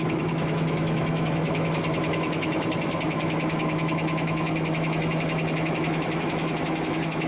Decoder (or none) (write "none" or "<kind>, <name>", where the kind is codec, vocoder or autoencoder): autoencoder, DAC-VAE